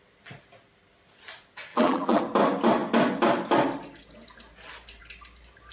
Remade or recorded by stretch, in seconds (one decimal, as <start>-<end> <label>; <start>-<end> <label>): 0.0-1.7 recorded; 1.7-2.2 remade; 2.2-5.7 recorded